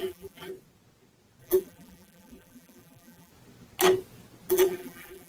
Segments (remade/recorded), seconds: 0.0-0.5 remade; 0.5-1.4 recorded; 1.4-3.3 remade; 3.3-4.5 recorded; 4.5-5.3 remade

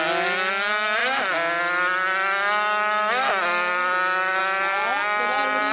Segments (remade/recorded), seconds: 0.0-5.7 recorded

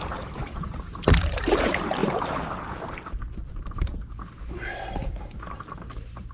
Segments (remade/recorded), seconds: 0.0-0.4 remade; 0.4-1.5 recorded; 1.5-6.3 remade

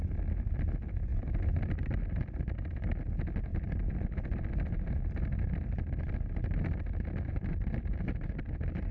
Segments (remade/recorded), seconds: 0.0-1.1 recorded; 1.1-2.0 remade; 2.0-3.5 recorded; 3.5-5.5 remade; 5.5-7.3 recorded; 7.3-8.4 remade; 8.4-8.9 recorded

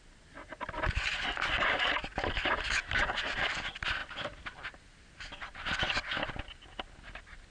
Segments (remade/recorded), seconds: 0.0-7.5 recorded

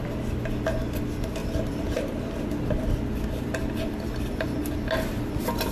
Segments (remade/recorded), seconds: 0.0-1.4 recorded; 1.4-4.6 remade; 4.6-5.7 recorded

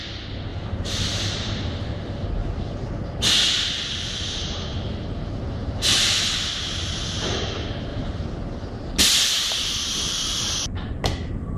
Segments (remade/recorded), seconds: 0.0-0.5 recorded; 0.5-1.6 remade; 1.6-2.4 recorded; 2.4-2.9 remade; 2.9-5.6 recorded; 5.6-6.5 remade; 6.5-7.9 recorded; 7.9-10.5 remade; 10.5-11.6 recorded